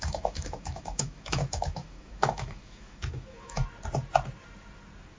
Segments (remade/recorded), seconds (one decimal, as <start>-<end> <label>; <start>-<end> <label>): 0.0-3.6 remade; 3.6-5.2 recorded